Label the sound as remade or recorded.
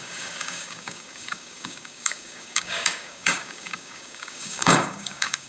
remade